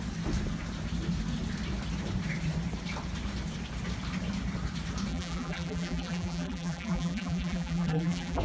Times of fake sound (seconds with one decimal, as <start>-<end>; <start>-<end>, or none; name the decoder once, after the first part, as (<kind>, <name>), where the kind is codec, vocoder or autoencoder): 5.1-8.4 (vocoder, BigVGAN v2)